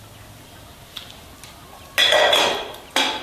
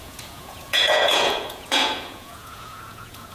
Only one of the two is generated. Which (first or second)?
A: second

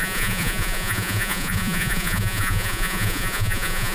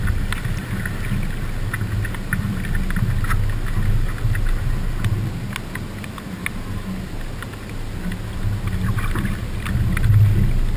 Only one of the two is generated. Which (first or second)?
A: first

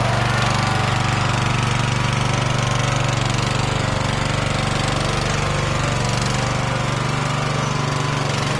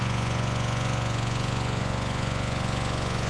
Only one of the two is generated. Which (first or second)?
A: second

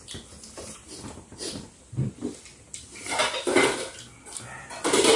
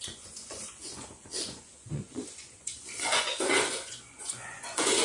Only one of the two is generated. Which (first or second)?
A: second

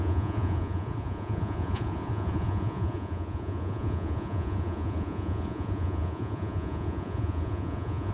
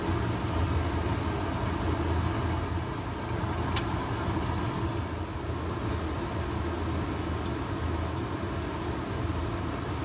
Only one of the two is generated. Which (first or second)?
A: first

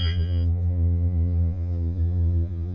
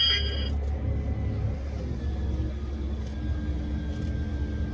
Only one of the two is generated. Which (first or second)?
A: first